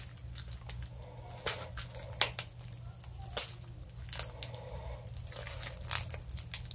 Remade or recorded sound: recorded